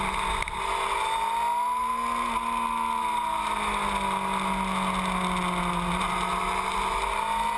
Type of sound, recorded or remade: recorded